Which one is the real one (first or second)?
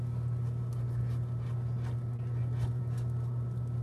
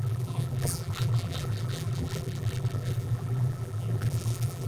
first